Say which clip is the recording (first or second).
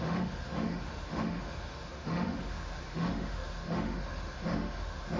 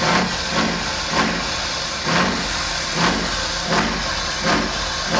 second